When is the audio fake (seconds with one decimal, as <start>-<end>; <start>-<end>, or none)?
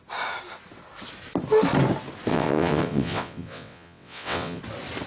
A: 2.3-4.6